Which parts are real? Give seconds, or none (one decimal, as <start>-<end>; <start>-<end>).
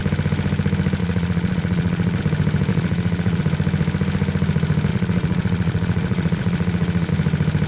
0.0-1.0; 2.2-2.7; 3.4-4.9; 7.1-7.7